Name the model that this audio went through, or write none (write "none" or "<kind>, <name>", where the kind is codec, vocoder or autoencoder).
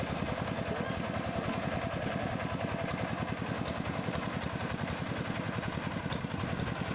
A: none